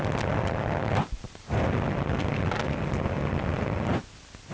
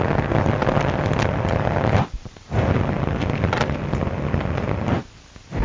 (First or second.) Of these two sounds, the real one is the first